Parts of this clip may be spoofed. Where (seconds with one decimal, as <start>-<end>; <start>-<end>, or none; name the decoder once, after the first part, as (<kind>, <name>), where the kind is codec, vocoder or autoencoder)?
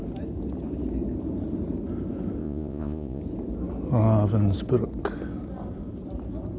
2.4-3.2 (vocoder, Vocos)